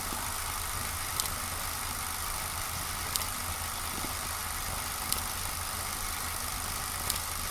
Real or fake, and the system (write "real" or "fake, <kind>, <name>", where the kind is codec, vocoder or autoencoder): real